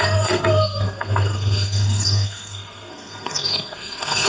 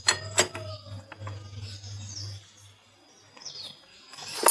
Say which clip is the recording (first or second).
second